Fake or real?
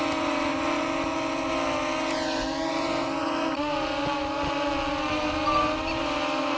real